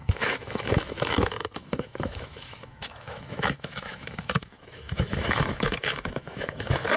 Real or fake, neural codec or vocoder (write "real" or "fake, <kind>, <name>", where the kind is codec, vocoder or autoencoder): fake, autoencoder, DAC-VAE